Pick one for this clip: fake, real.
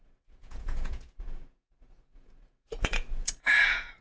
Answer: fake